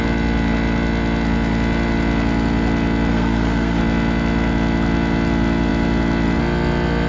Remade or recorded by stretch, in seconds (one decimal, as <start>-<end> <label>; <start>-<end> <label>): 0.0-3.1 recorded; 3.1-3.8 remade; 3.8-7.1 recorded